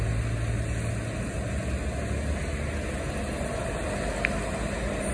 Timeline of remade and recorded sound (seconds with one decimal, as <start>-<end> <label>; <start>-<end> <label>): 0.0-5.1 recorded